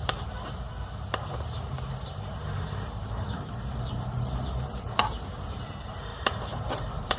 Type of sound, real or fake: fake